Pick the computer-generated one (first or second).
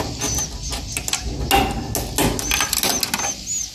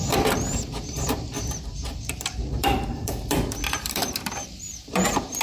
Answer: second